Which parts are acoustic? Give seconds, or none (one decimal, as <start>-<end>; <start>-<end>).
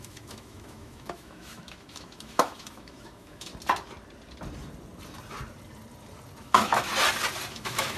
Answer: 3.5-6.4; 6.9-7.5